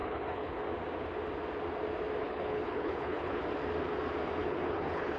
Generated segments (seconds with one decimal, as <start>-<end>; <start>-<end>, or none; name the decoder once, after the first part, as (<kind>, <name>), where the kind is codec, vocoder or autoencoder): 0.0-0.6 (codec, HILCodec); 2.2-3.4; 4.4-5.2